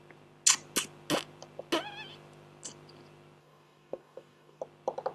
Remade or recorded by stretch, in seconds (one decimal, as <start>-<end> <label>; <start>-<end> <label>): 0.0-3.4 recorded; 3.4-4.6 remade; 4.6-5.1 recorded